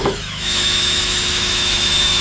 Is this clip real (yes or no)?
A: no